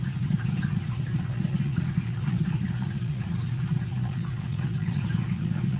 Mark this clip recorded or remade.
remade